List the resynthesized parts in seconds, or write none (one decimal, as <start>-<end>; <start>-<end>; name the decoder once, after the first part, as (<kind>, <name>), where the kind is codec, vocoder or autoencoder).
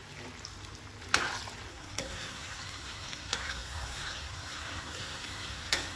1.7-6.0 (codec, SNAC)